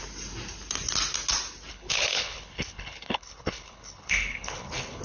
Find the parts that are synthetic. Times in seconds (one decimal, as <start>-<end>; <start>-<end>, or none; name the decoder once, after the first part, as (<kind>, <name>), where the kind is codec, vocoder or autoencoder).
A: 1.7-5.0 (codec, HILCodec)